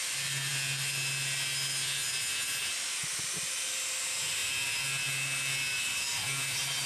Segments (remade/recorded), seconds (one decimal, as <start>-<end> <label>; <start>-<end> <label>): 0.0-6.9 recorded